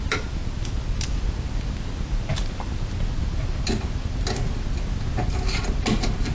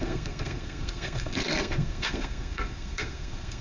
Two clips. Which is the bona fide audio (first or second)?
first